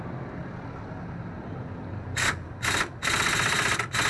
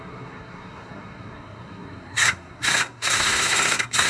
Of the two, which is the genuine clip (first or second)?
first